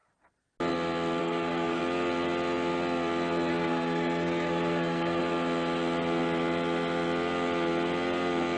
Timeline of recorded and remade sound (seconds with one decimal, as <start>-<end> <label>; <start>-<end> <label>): 0.0-1.2 recorded; 1.2-1.8 remade; 1.8-3.5 recorded; 3.5-5.2 remade; 5.2-8.6 recorded